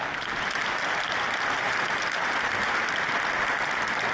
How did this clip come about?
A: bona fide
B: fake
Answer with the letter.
A